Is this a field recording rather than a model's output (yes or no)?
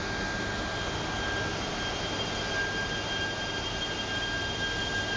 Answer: yes